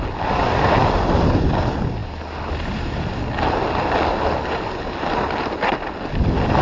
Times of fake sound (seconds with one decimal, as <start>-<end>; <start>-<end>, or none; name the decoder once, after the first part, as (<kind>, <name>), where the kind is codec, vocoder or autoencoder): none